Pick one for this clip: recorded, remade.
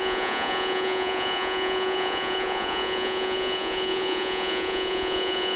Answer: remade